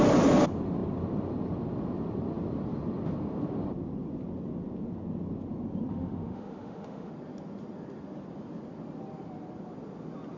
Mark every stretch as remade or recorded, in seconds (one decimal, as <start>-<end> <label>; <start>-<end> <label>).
0.0-5.9 recorded; 5.9-7.1 remade; 7.1-10.4 recorded